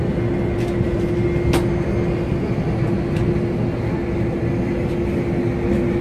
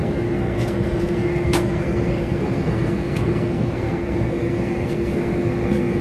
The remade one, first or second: second